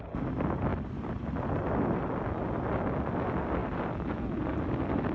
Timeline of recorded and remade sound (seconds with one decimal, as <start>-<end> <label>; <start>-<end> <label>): 0.0-5.1 recorded